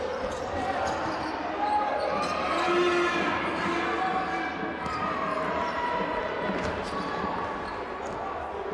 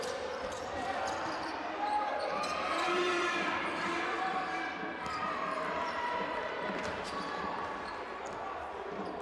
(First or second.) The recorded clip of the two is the first